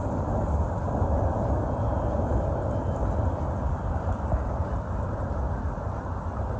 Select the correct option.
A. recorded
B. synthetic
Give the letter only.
A